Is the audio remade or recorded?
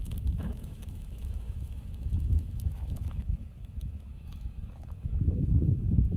remade